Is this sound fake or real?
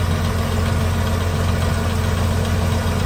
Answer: real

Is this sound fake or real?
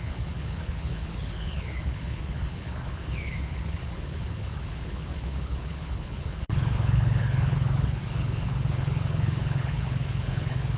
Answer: fake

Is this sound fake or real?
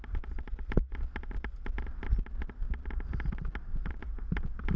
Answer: real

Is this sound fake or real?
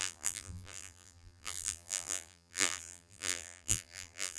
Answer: fake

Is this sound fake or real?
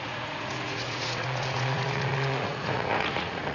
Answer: fake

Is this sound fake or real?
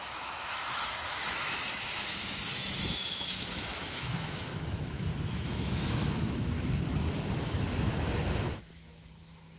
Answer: fake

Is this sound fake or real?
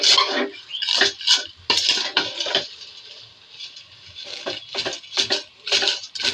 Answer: real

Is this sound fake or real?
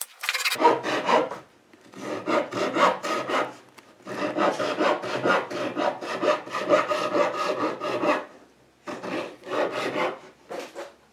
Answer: real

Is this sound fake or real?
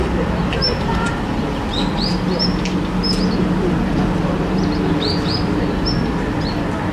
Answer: real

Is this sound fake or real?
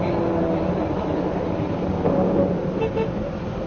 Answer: real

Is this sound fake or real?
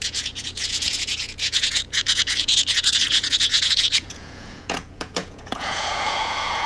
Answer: fake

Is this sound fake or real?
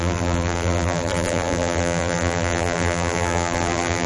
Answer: fake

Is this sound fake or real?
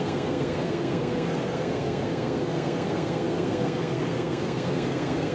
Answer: fake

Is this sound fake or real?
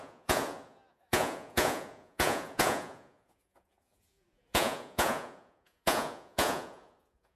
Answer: fake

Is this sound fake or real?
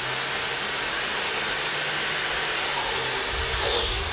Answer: real